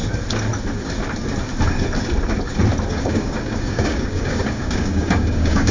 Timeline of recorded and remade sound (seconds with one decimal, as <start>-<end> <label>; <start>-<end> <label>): 0.0-2.9 recorded; 2.9-5.7 remade